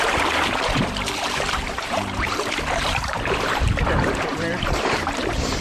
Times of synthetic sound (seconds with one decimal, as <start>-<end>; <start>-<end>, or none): 0.0-5.6